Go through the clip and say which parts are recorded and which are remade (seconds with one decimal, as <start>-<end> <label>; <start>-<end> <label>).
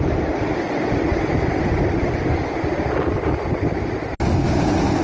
0.0-5.0 recorded